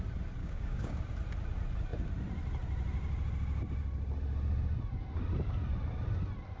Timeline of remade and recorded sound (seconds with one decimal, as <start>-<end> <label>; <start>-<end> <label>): 0.0-0.4 recorded; 0.4-1.0 remade; 1.0-6.6 recorded